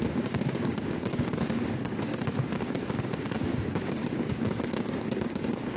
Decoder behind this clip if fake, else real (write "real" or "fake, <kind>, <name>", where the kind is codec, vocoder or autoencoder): fake, codec, DAC